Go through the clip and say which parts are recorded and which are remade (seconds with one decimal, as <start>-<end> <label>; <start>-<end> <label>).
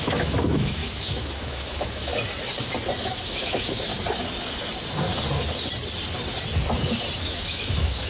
0.0-2.1 remade; 2.1-3.0 recorded; 3.0-3.9 remade; 3.9-7.2 recorded; 7.2-8.1 remade